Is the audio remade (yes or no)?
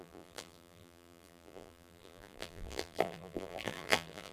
yes